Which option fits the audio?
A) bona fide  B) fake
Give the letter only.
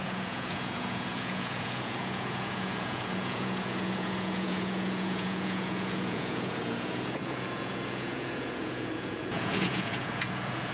B